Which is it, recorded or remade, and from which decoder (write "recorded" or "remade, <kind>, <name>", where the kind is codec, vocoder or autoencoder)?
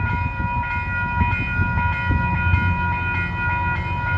recorded